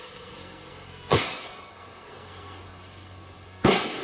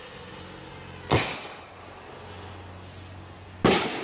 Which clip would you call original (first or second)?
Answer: second